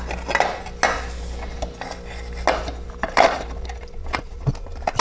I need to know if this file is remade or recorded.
recorded